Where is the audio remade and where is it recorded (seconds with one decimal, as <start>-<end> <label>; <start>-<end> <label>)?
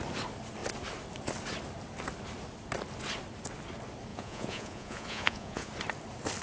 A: 0.0-4.1 recorded; 4.1-5.7 remade; 5.7-6.4 recorded